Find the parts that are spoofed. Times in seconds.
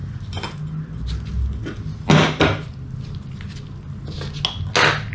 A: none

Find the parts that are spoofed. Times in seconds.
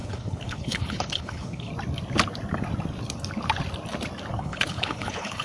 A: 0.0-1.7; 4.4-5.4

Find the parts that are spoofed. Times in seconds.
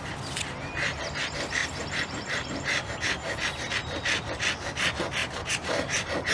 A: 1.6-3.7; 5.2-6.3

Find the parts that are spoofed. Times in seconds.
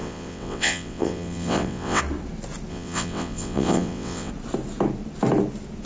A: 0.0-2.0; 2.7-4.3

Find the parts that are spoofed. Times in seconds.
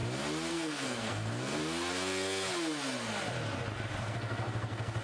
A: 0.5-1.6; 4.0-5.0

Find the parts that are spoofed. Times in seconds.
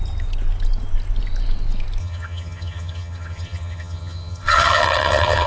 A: 2.0-5.5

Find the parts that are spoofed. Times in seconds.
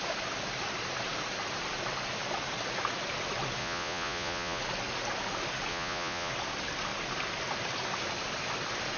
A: 3.6-4.6; 5.7-6.3